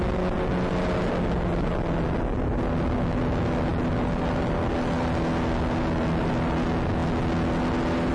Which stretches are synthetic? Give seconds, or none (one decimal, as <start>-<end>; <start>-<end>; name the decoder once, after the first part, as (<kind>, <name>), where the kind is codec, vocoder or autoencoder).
none